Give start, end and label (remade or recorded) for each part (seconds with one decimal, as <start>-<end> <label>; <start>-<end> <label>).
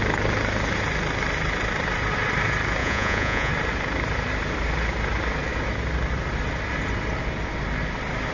0.0-2.8 recorded; 2.8-3.5 remade; 3.5-8.3 recorded